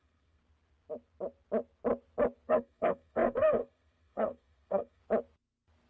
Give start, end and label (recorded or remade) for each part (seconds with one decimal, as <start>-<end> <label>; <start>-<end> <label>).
0.0-0.4 remade; 0.4-2.5 recorded; 2.5-5.0 remade; 5.0-5.9 recorded